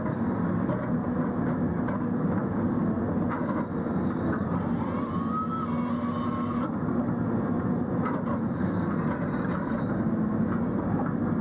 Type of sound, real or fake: real